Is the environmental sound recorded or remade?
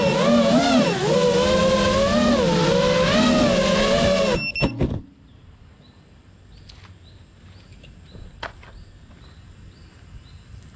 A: recorded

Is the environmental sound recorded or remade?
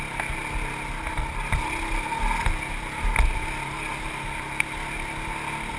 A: recorded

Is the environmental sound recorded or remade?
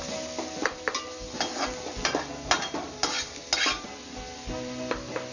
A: recorded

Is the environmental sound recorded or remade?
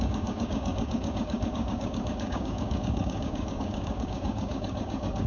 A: remade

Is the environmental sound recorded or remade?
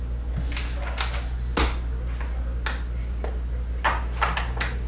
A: recorded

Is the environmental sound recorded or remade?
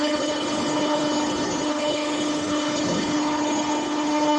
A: remade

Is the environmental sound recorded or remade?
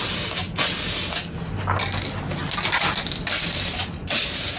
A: recorded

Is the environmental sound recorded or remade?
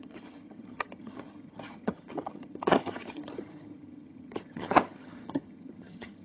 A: remade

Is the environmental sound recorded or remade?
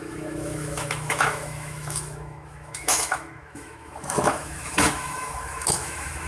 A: remade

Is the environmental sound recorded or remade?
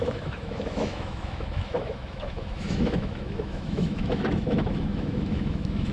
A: remade